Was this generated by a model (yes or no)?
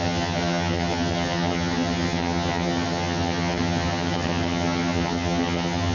yes